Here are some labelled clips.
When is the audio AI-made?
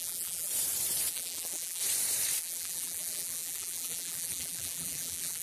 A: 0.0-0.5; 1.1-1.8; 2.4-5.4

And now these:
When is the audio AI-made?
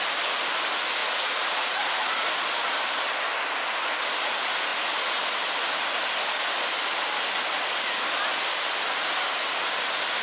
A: 1.0-2.3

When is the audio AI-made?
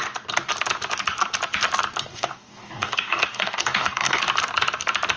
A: 2.1-4.2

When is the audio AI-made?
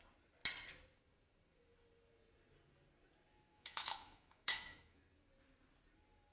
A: 3.5-5.0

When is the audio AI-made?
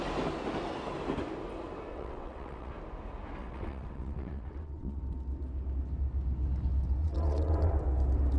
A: 1.9-2.7; 3.4-5.0; 7.0-7.7